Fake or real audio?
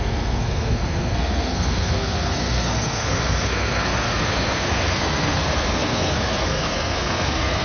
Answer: fake